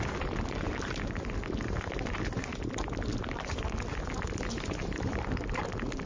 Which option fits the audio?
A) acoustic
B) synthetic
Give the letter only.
A